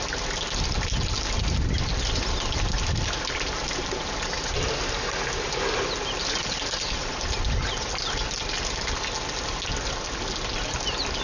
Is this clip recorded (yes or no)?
yes